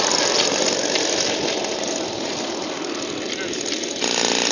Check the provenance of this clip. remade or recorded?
recorded